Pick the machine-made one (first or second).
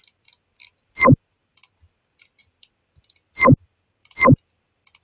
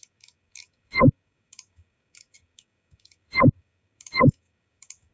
second